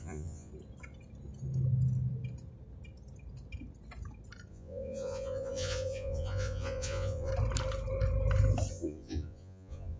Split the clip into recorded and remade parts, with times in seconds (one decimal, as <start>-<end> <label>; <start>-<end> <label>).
0.0-0.5 remade; 0.5-4.5 recorded; 4.5-7.3 remade; 7.3-8.7 recorded; 8.7-10.0 remade